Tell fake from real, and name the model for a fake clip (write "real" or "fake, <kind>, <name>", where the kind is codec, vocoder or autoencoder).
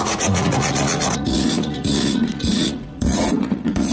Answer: fake, vocoder, Vocos